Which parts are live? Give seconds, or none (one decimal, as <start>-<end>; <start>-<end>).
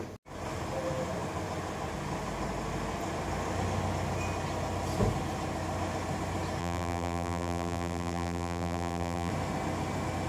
0.0-6.6; 9.3-10.3